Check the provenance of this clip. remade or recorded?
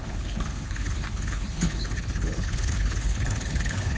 remade